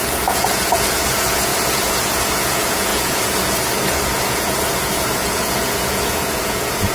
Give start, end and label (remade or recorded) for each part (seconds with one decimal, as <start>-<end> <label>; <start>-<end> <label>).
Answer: 0.0-6.9 remade